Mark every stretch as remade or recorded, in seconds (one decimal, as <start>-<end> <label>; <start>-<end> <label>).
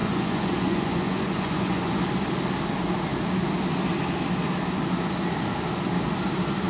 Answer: 0.0-2.0 remade; 2.0-6.7 recorded